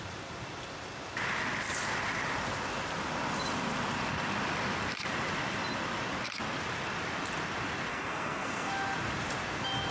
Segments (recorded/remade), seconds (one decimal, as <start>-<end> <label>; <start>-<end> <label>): 0.0-7.9 recorded; 7.9-8.7 remade; 8.7-9.9 recorded